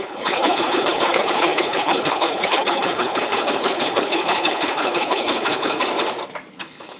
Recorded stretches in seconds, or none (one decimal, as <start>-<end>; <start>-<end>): 5.8-6.5